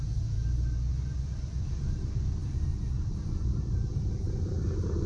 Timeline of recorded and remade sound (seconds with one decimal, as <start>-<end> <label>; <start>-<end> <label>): 0.0-5.1 recorded